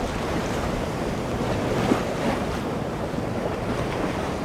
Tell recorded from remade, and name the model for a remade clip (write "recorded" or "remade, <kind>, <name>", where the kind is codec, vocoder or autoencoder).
remade, vocoder, BigVGAN v2